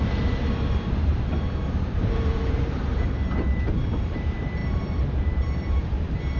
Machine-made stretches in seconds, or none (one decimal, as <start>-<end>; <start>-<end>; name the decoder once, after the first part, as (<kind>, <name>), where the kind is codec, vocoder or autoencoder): 0.0-6.4 (vocoder, BigVGAN v2)